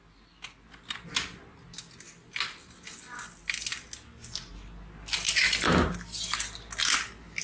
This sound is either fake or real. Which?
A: real